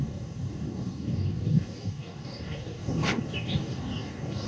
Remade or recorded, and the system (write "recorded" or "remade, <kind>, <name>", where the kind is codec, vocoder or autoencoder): remade, codec, DAC